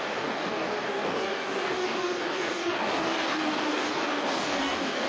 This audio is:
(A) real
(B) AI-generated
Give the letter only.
B